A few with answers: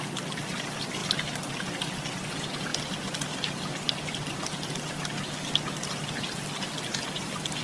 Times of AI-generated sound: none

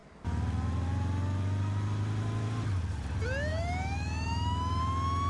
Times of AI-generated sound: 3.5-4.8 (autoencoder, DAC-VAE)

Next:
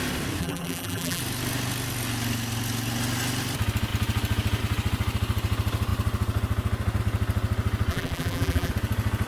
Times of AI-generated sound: 0.4-1.2 (vocoder, BigVGAN v2); 7.9-8.7